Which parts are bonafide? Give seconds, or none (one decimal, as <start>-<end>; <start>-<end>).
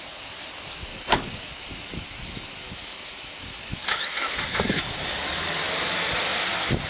0.0-0.9; 5.0-6.9